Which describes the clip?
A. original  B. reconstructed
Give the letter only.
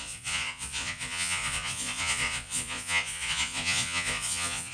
B